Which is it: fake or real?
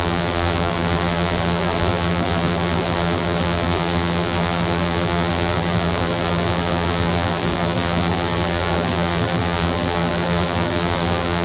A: fake